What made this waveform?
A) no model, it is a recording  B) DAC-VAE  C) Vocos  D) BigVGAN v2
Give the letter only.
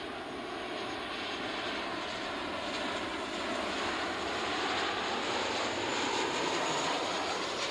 A